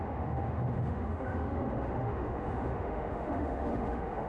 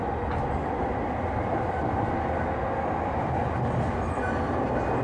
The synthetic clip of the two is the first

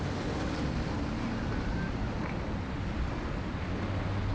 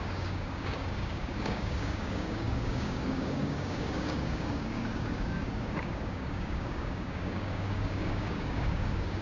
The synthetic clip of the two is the second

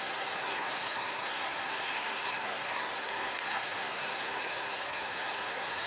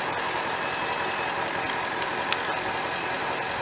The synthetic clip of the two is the first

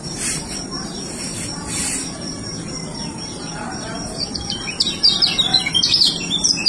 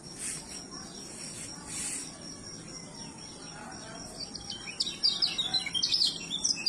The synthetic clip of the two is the first